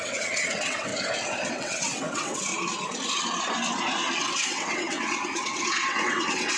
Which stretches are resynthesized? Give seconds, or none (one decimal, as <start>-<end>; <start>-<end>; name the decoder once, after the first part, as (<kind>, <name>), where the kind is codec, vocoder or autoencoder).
0.0-0.9 (vocoder, WaveNeXt); 1.5-2.5; 4.2-6.6